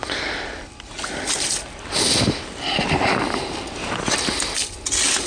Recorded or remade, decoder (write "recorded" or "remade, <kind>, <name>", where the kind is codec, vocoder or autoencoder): recorded